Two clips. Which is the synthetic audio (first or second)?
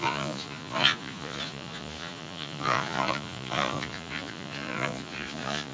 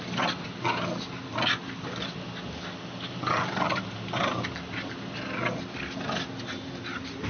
first